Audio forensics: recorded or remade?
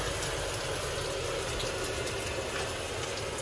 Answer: recorded